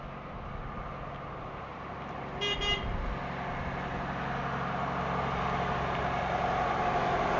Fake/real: real